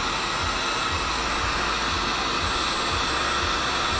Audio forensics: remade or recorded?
recorded